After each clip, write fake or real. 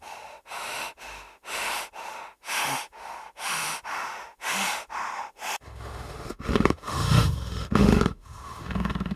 fake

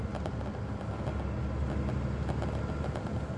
real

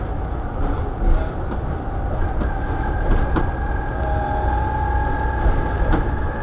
real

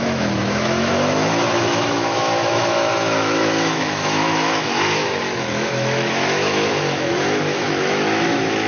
fake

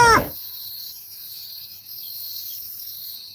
fake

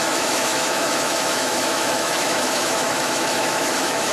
fake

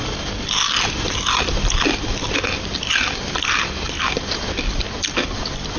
real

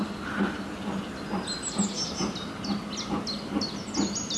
real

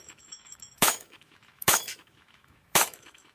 fake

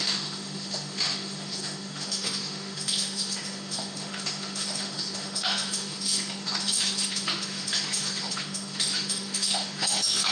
fake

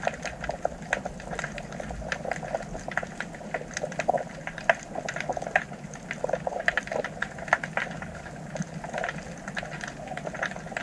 real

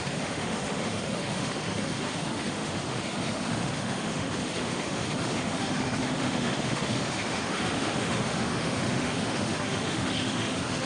fake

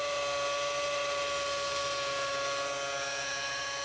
real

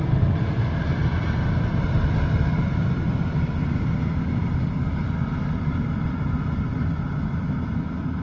real